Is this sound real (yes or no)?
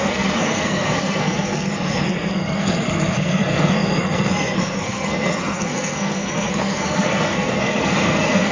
no